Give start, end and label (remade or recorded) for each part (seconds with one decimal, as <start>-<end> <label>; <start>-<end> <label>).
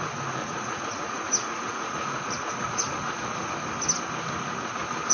0.0-0.4 recorded; 0.4-3.5 remade; 3.5-5.1 recorded